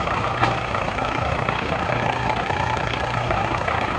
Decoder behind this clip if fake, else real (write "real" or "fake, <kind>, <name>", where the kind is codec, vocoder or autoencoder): fake, codec, SNAC